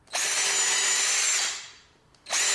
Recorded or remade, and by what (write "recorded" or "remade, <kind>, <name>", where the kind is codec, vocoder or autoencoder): recorded